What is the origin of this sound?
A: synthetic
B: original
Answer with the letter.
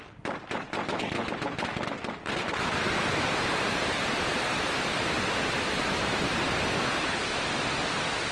B